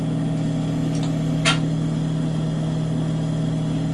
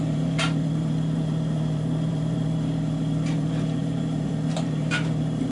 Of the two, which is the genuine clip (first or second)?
first